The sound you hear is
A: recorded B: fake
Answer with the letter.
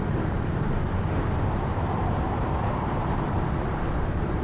B